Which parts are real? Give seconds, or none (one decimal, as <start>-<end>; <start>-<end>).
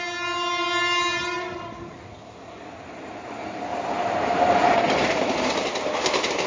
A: 0.0-6.5